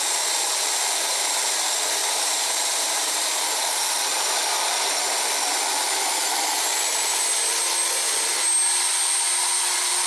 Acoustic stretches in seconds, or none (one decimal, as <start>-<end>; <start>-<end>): 0.0-2.0; 3.4-10.1